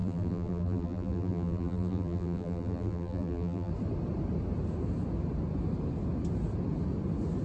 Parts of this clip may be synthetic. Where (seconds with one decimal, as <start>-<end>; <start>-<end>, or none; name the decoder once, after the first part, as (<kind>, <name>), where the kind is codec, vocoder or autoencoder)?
0.0-3.7 (vocoder, BigVGAN v2)

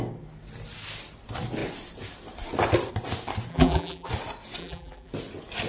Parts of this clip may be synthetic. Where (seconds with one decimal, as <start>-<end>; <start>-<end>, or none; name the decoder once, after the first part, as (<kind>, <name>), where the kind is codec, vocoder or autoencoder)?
3.5-4.1 (vocoder, BigVGAN v2); 4.6-5.1

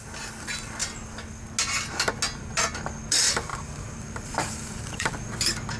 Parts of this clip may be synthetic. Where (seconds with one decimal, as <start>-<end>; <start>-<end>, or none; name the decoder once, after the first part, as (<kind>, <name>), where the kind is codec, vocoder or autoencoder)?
3.5-5.1 (vocoder, BigVGAN v2)

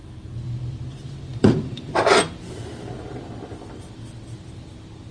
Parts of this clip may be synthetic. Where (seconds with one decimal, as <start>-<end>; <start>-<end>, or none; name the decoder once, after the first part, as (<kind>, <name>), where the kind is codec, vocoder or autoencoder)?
0.0-5.1 (vocoder, BigVGAN v2)

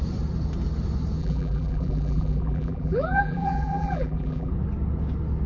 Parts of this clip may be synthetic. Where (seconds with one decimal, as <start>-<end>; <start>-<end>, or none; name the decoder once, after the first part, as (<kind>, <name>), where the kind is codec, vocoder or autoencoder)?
1.2-4.5 (vocoder, BigVGAN v2)

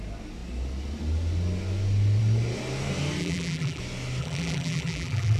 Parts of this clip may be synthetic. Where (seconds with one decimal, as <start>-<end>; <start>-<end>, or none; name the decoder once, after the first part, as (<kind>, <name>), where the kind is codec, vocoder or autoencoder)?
3.2-3.8 (vocoder, BigVGAN v2); 4.2-5.4

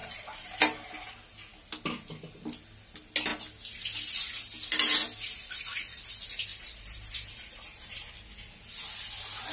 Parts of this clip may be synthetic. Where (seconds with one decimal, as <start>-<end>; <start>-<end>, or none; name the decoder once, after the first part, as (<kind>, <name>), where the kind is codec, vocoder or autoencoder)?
0.0-0.6 (vocoder, BigVGAN v2); 6.5-8.1

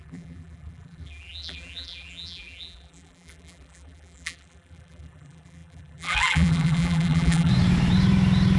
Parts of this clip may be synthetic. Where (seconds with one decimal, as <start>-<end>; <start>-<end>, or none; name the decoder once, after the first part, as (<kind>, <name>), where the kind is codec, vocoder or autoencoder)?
0.0-7.5 (vocoder, BigVGAN v2)